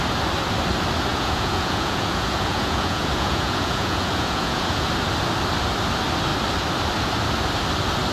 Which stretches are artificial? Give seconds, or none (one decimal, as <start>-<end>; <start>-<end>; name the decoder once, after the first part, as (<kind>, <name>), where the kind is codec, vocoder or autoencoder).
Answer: 1.1-4.9 (vocoder, Vocos)